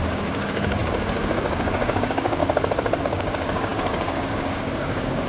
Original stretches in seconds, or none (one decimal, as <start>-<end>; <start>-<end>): 2.4-3.0